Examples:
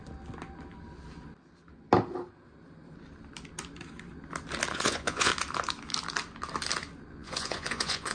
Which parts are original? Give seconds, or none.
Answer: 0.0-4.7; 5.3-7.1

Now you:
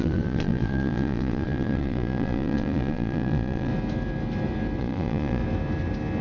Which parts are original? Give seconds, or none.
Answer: 3.7-4.8; 5.4-6.2

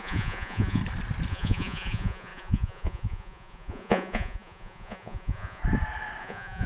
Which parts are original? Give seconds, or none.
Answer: 0.8-1.3; 5.6-6.2